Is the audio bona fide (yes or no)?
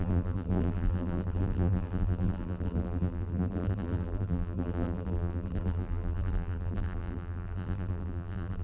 no